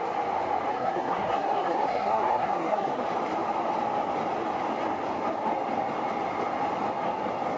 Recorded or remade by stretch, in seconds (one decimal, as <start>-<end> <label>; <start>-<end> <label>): 0.0-0.7 recorded; 0.7-3.0 remade; 3.0-7.6 recorded